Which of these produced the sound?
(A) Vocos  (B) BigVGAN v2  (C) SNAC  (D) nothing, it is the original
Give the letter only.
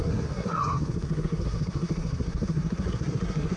C